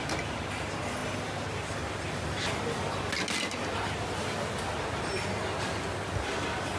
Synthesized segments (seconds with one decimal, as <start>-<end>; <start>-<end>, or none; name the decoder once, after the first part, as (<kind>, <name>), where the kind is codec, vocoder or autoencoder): none